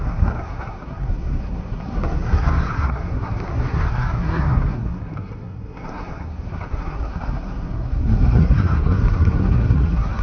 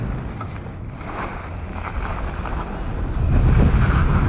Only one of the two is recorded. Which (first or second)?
second